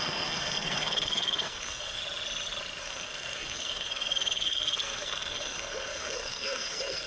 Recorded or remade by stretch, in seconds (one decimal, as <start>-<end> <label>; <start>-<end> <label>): 0.0-2.0 remade; 2.0-2.8 recorded; 2.8-7.1 remade